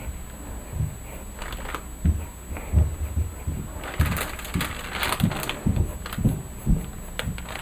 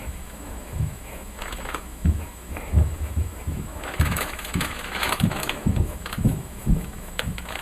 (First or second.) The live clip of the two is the first